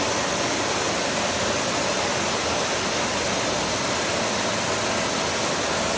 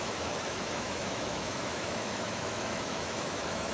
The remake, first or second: second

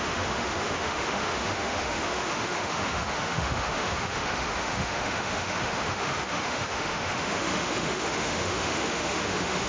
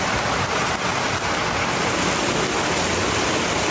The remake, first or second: first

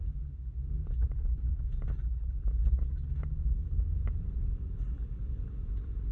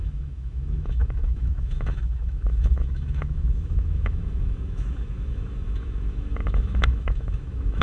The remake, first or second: second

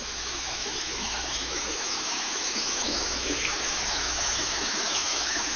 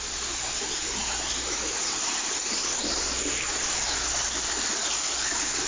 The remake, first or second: first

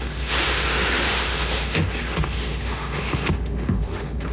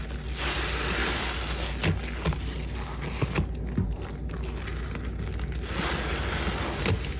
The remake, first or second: first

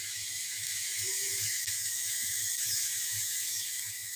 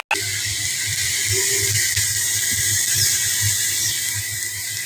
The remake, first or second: first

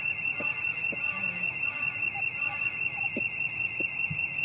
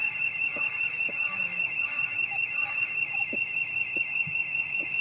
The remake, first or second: second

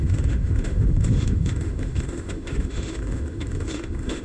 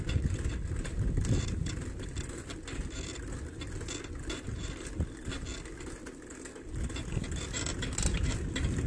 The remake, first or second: first